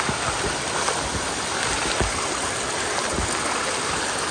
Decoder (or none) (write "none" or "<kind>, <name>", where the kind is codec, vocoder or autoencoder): none